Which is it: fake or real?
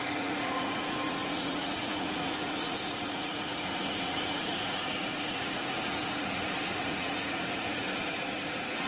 fake